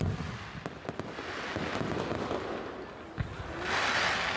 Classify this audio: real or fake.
real